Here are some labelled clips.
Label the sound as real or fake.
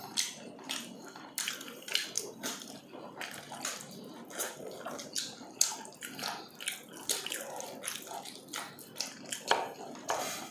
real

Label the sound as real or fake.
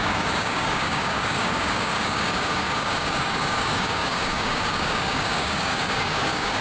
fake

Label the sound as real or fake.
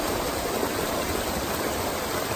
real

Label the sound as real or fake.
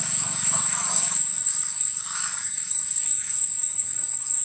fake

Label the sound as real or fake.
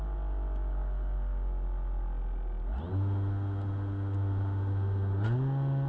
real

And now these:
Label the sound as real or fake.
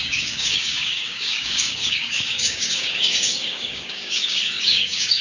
fake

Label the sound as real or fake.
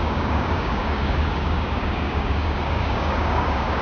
fake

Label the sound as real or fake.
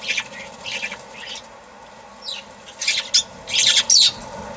real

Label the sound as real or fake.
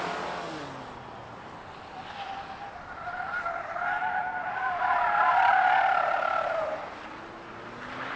real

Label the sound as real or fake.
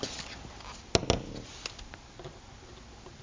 real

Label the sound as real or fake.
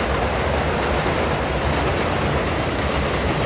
real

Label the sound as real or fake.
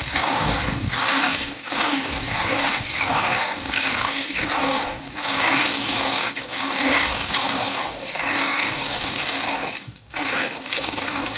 fake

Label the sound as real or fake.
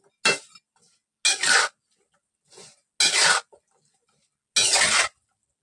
real